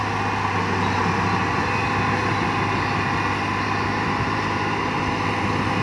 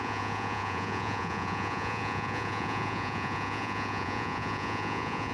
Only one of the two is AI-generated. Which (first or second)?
second